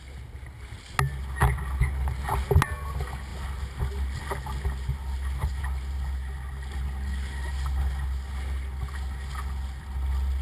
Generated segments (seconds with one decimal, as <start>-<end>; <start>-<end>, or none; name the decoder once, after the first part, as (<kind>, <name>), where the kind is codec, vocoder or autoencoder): 5.0-5.6 (vocoder, BigVGAN v2)